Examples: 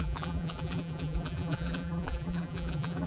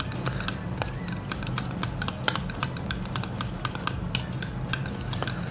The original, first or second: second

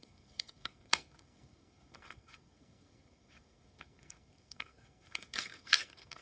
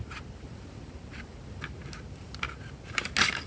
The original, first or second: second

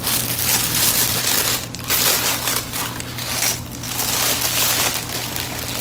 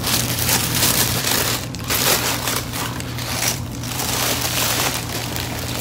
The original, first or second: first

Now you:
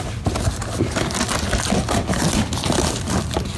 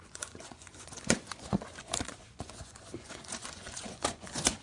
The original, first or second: first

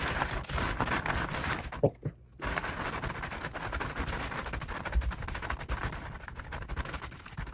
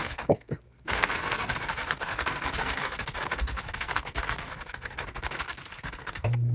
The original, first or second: first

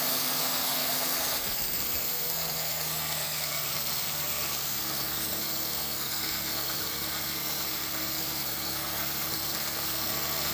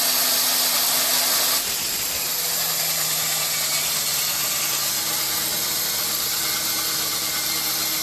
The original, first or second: second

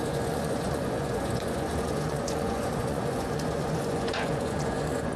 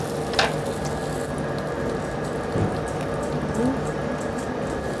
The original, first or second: second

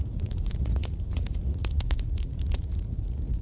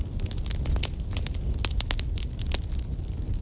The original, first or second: second